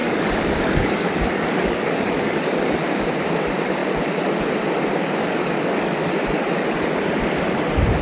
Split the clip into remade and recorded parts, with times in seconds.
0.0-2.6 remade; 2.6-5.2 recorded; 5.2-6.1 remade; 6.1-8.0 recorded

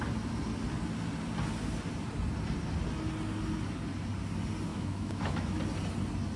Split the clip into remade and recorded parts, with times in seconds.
0.0-4.7 recorded; 4.7-5.6 remade; 5.6-6.4 recorded

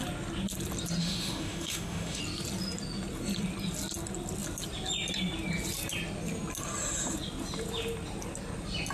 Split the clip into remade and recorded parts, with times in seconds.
0.0-1.0 recorded; 1.0-2.2 remade; 2.2-8.9 recorded